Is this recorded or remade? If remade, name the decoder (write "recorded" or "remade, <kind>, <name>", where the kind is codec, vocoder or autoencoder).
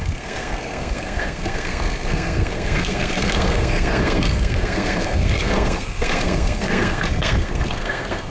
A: remade, codec, SNAC